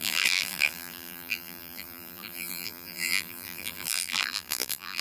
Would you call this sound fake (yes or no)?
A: yes